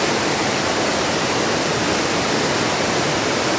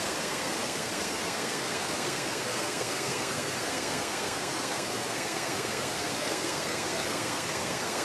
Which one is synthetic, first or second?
second